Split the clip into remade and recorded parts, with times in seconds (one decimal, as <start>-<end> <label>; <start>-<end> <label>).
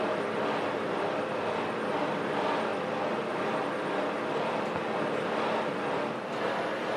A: 0.0-2.7 recorded; 2.7-3.4 remade; 3.4-7.0 recorded